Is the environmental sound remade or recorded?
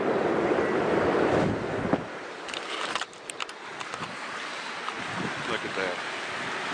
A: recorded